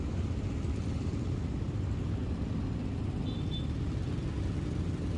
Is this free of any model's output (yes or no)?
yes